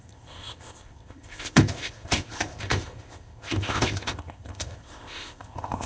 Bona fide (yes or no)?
no